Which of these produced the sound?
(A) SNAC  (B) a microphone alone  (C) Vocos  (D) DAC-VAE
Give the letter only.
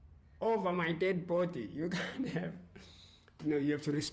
C